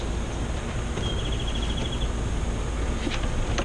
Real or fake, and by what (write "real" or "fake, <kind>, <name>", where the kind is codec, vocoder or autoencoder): real